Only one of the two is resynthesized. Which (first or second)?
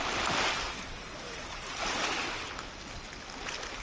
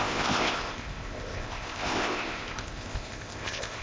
second